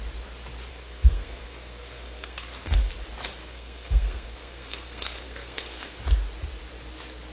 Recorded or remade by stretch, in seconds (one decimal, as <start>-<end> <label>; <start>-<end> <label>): 0.0-0.7 recorded; 0.7-2.9 remade; 2.9-3.4 recorded; 3.4-6.0 remade; 6.0-7.3 recorded